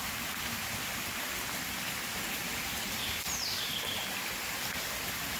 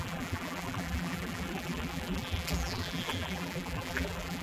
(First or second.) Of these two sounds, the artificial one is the second